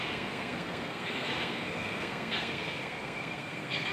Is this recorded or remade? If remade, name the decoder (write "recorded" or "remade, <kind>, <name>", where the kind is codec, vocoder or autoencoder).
remade, codec, SNAC